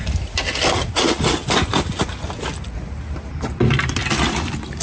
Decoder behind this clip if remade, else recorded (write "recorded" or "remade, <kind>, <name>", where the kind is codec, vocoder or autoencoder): recorded